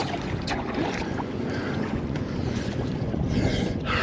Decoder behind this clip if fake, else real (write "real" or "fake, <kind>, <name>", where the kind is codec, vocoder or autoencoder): fake, vocoder, Vocos